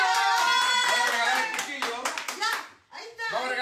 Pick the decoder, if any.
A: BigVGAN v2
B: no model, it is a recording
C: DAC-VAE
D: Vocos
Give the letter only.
B